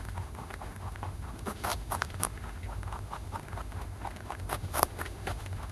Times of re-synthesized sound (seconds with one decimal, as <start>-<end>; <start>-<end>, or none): 0.0-5.7